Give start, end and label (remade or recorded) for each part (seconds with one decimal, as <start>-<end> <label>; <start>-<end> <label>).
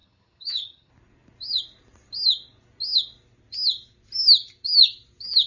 0.0-0.9 remade; 0.9-5.5 recorded